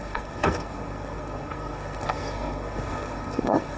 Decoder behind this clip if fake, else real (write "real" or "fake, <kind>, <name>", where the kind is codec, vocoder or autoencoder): fake, codec, SNAC